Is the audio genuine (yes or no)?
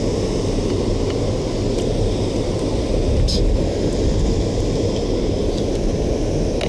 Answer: yes